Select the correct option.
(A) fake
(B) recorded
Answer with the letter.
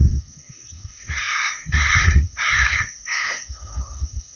A